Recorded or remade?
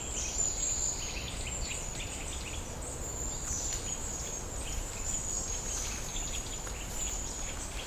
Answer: recorded